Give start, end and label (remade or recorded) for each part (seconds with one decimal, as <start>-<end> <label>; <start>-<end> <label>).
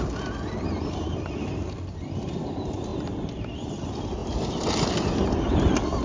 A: 0.0-6.0 recorded